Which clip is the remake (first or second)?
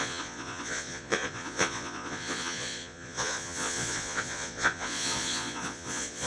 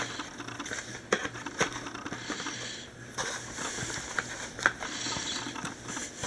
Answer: first